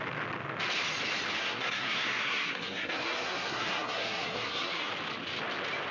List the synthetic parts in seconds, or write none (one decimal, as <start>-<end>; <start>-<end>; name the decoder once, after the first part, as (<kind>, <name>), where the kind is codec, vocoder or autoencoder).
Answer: 1.4-4.9 (codec, SNAC)